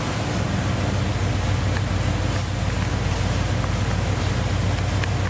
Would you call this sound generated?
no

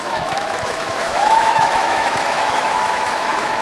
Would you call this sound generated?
yes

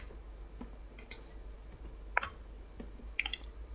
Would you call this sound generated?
no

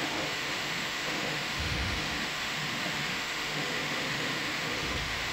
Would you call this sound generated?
yes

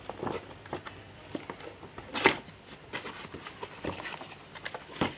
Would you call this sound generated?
no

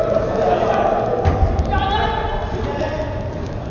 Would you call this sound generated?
no